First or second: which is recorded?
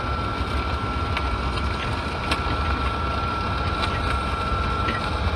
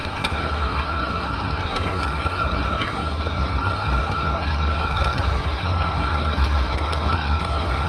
first